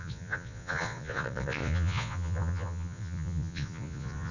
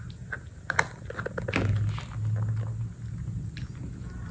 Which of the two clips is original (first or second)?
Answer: second